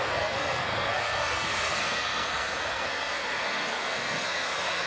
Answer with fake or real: fake